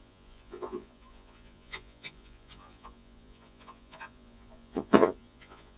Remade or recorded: remade